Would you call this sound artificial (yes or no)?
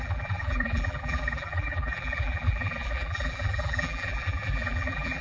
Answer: yes